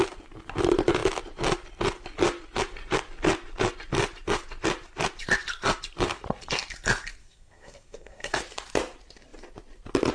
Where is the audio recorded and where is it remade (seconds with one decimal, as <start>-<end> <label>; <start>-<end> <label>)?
0.0-7.2 recorded; 7.2-8.4 remade; 8.4-10.1 recorded